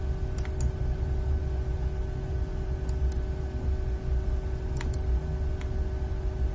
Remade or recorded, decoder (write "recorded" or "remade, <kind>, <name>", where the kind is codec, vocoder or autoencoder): recorded